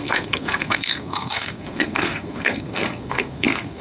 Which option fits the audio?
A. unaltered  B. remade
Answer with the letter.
B